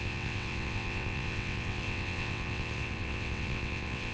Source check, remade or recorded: remade